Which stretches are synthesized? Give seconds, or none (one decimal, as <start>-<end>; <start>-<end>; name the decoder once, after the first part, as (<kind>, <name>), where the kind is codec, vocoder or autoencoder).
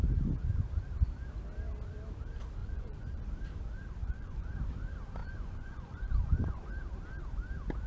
2.6-3.2 (vocoder, Vocos); 4.0-4.5; 5.2-6.7